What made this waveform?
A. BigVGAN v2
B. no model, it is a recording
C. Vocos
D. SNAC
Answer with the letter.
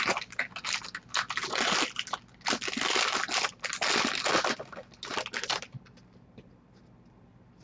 B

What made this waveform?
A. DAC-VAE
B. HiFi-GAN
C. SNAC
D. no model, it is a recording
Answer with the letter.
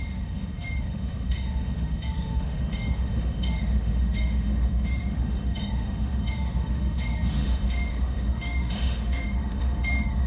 A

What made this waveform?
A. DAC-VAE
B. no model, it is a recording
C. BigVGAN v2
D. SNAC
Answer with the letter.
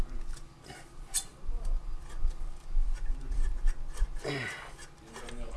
B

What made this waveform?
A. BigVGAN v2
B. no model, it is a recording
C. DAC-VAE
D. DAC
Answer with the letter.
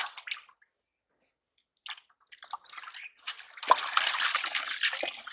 B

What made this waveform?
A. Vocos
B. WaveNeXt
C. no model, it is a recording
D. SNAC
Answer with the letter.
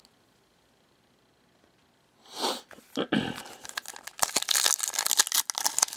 C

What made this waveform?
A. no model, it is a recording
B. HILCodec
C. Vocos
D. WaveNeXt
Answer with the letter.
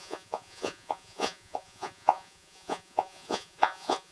C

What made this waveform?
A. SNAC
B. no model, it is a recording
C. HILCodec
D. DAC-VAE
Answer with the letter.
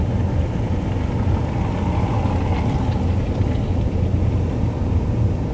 B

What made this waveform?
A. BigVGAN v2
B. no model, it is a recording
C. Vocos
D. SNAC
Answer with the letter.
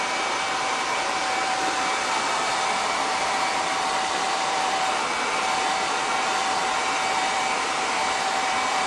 A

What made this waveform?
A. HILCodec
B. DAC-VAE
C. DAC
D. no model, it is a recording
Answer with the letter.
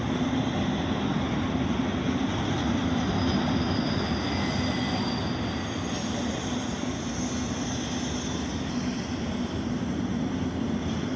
D